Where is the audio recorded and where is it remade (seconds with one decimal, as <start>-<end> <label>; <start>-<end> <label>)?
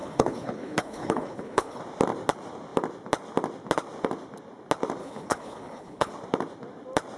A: 0.0-1.8 remade; 1.8-5.0 recorded; 5.0-6.1 remade; 6.1-7.2 recorded